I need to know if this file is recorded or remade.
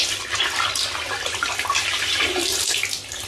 recorded